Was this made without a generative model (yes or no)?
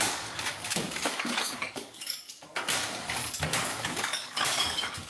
no